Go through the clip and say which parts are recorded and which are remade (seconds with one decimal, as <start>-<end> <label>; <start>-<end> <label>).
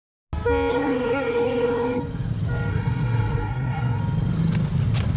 0.0-0.7 recorded; 0.7-2.0 remade; 2.0-2.7 recorded; 2.7-4.0 remade; 4.0-5.2 recorded